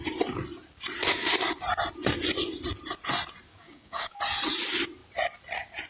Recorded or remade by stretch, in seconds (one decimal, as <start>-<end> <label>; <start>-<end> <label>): 0.0-3.5 recorded; 3.5-4.2 remade; 4.2-5.9 recorded